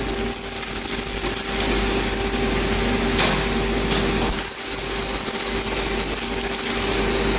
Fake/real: real